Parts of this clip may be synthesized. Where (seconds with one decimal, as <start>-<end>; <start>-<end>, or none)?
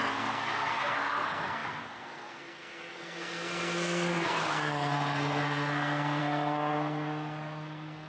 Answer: 0.0-8.1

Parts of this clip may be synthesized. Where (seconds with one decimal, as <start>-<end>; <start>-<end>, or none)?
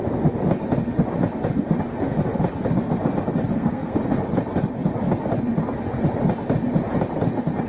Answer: 3.5-4.0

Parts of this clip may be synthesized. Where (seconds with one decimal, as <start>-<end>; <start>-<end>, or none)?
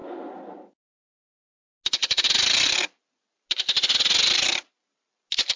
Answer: none